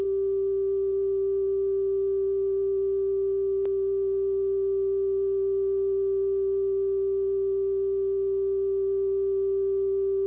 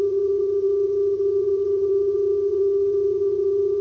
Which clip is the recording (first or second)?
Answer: first